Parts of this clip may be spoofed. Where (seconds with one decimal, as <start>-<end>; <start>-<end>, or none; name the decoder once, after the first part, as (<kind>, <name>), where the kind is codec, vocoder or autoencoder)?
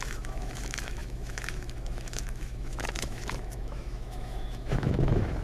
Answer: 0.0-5.4 (autoencoder, DAC-VAE)